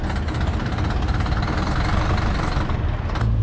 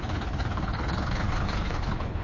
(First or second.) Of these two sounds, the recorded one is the first